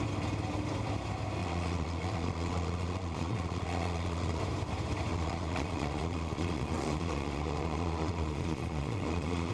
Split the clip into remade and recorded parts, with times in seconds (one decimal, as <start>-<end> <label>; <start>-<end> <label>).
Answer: 0.0-1.4 recorded; 1.4-4.4 remade; 4.4-5.1 recorded; 5.1-9.5 remade